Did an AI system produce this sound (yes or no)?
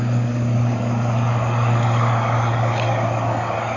yes